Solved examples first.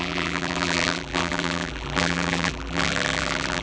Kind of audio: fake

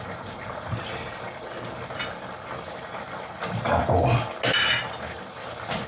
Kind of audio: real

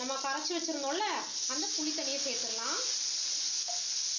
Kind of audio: real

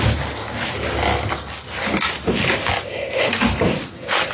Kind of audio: real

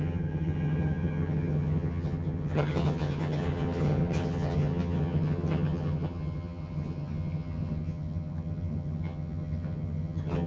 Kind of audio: fake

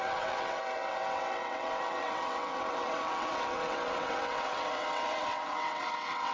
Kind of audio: fake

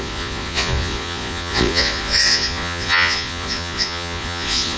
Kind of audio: fake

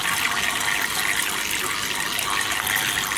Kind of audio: real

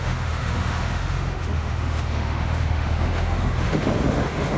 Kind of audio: fake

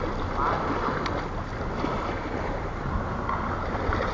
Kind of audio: real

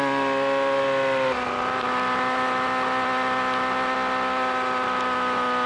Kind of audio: real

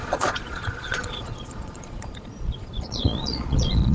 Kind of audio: fake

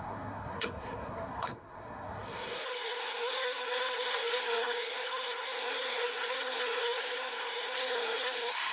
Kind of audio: fake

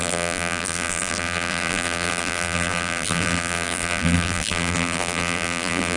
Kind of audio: fake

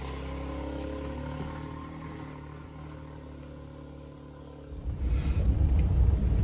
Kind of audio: real